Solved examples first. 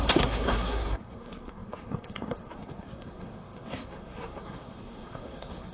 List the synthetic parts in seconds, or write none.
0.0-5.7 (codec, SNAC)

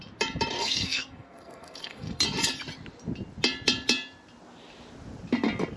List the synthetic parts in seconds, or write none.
0.6-2.2 (codec, SNAC)

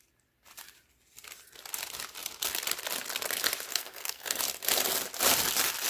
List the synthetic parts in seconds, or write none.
3.7-4.4 (codec, SNAC)

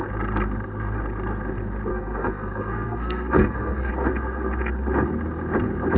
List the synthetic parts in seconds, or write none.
1.9-3.9 (codec, SNAC)

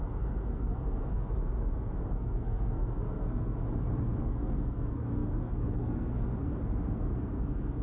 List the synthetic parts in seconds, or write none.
0.0-3.6 (codec, SNAC); 4.2-7.8

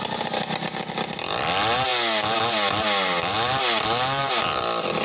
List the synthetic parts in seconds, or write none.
none